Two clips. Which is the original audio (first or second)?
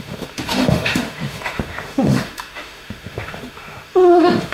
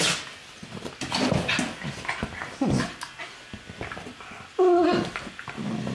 second